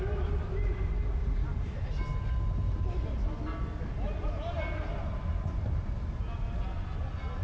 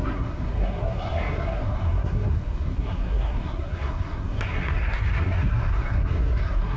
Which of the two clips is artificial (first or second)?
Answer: second